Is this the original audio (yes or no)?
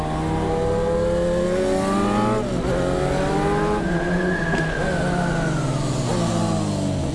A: yes